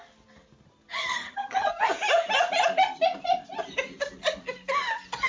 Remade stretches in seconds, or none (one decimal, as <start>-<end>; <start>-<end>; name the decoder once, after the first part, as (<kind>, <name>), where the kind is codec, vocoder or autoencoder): 1.1-1.7 (vocoder, HiFi-GAN)